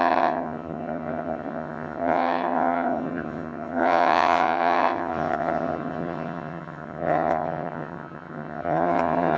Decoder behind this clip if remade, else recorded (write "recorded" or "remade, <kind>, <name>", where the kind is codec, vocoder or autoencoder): remade, vocoder, HiFi-GAN